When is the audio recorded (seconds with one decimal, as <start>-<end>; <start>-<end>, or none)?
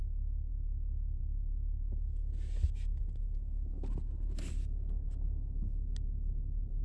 0.0-6.8